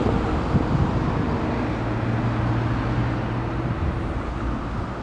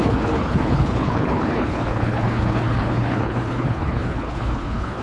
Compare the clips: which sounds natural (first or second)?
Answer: first